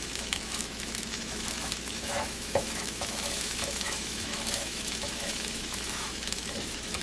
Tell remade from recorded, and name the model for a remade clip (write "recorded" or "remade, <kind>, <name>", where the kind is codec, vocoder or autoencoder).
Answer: remade, autoencoder, DAC-VAE